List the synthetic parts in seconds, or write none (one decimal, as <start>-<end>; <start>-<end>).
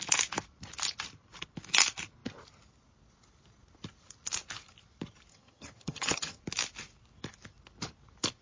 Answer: 5.3-6.4